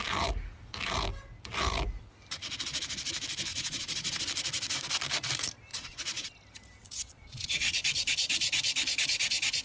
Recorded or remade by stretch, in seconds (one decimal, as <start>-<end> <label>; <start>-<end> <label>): 0.0-3.5 recorded; 3.5-4.2 remade; 4.2-5.7 recorded; 5.7-6.3 remade; 6.3-6.8 recorded; 6.8-7.7 remade; 7.7-9.6 recorded

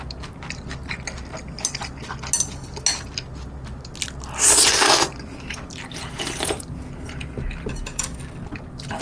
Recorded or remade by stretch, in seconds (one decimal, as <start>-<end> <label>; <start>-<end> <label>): 0.0-9.0 recorded

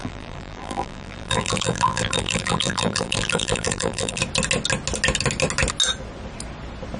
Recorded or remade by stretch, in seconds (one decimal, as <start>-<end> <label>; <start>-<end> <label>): 0.0-4.2 remade; 4.2-7.0 recorded

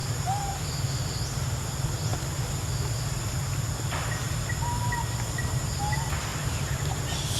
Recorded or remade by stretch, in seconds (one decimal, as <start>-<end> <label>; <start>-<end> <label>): 0.0-0.6 remade; 0.6-6.3 recorded; 6.3-7.4 remade

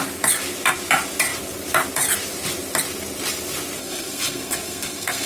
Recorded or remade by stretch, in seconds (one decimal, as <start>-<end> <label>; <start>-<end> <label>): 0.0-3.8 recorded; 3.8-5.3 remade